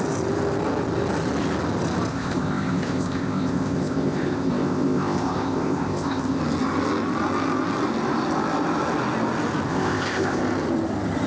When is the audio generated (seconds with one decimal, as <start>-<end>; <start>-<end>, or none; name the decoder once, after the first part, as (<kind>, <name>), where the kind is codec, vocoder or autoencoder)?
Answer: 2.1-6.4 (codec, ZipCodec); 9.7-10.4